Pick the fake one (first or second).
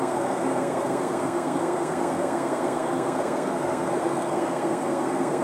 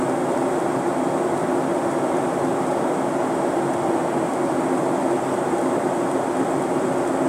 first